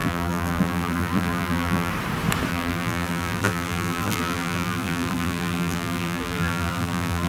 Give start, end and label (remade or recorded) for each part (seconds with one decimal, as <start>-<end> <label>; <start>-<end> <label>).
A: 0.0-1.9 remade; 1.9-2.5 recorded; 2.5-7.3 remade